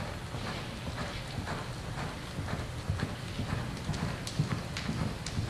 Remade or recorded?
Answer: recorded